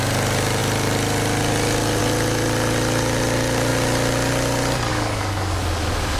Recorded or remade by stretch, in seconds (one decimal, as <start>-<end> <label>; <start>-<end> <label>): 0.0-4.9 recorded; 4.9-6.2 remade